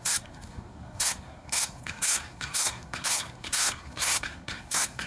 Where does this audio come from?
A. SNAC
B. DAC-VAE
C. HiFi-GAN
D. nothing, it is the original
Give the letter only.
A